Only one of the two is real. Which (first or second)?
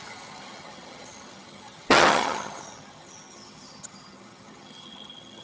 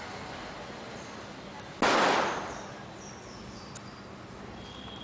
second